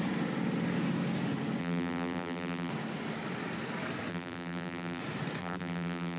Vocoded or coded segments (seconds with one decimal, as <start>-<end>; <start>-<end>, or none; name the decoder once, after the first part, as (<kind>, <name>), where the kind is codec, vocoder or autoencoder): 1.6-2.7 (vocoder, BigVGAN v2); 4.1-5.0; 5.4-6.2